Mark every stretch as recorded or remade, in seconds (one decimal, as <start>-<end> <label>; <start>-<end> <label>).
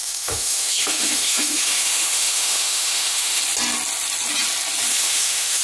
0.0-3.4 remade; 3.4-4.9 recorded; 4.9-5.6 remade